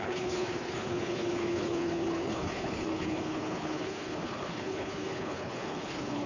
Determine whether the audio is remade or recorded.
remade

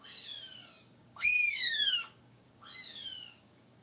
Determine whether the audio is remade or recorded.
remade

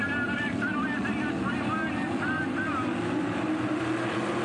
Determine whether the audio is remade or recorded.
remade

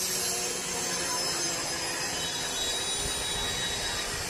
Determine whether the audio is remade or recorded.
recorded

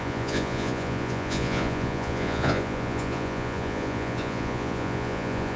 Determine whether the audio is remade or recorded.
remade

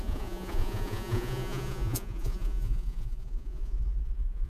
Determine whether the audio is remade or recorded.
remade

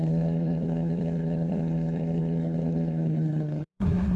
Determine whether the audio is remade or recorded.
remade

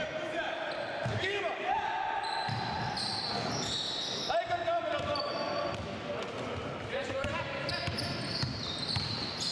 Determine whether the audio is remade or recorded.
recorded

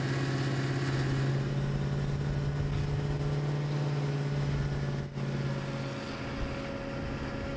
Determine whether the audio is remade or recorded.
recorded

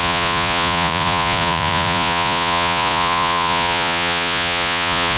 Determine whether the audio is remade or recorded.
remade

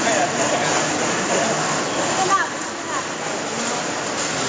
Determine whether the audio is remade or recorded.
recorded